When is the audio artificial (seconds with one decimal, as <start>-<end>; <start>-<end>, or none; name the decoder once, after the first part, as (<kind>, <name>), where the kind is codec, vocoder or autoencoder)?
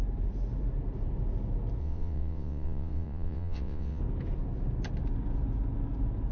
1.8-4.0 (vocoder, WaveNeXt)